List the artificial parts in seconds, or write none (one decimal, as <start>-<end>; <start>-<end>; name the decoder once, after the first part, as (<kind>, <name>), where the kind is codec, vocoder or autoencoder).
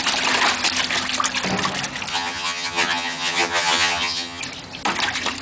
2.1-4.4 (vocoder, HiFi-GAN)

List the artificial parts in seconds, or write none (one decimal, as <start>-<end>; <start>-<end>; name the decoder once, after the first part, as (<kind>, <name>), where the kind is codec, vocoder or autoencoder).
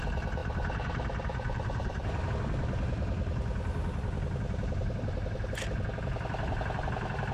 0.4-2.3 (vocoder, BigVGAN v2)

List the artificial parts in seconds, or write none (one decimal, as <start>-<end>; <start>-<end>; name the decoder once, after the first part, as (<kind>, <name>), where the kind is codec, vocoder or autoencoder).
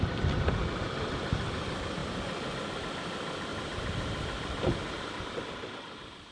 0.0-2.0 (vocoder, BigVGAN v2); 2.7-6.3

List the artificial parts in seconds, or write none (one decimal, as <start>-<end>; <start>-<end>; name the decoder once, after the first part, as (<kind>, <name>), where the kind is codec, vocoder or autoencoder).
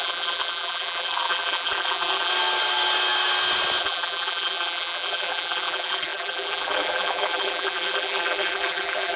0.0-2.3 (vocoder, BigVGAN v2); 3.8-9.2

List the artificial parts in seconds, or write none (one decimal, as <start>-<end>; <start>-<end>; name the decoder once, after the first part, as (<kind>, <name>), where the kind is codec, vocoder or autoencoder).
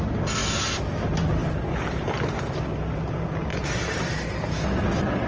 1.4-2.6 (vocoder, BigVGAN v2); 3.5-4.5